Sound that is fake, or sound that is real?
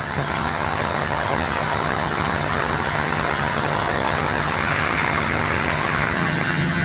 fake